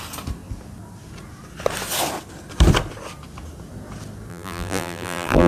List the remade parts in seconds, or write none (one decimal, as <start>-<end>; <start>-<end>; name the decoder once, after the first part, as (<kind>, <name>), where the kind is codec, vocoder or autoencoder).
4.3-5.5 (vocoder, BigVGAN v2)

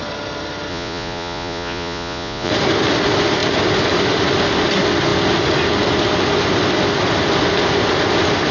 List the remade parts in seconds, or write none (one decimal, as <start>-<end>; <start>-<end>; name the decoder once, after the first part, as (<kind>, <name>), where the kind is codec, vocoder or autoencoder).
0.7-2.5 (vocoder, Vocos)

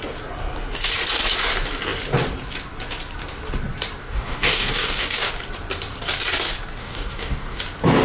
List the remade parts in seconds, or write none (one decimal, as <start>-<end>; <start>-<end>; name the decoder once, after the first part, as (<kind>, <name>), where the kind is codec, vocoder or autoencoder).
4.0-5.3 (codec, DAC); 6.8-7.6

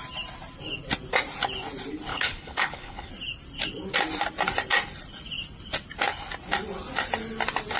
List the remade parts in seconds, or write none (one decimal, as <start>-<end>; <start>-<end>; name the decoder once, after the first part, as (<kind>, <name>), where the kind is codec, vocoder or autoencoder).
2.1-3.1 (codec, HILCodec)

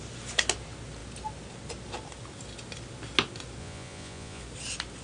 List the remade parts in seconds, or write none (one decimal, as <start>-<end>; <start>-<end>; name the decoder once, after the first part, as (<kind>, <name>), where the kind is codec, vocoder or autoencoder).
3.6-4.4 (vocoder, Vocos)